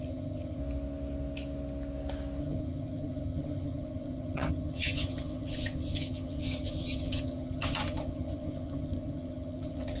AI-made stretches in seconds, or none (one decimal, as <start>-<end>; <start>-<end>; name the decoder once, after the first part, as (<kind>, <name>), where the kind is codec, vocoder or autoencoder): 0.0-0.6 (vocoder, HiFi-GAN); 2.4-10.0